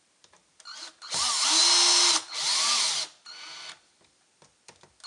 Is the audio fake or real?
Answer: real